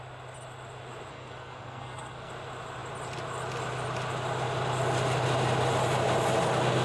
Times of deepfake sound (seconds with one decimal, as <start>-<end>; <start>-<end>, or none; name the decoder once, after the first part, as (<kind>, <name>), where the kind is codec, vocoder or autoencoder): 1.1-2.3 (codec, SNAC)